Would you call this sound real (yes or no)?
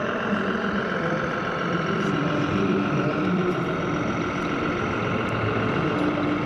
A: no